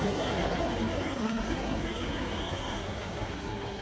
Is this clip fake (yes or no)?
yes